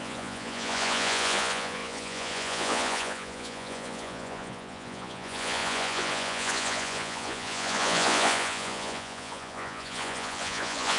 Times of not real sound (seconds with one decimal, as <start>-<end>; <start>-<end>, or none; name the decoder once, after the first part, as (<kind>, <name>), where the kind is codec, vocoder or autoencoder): 0.0-11.0 (vocoder, Vocos)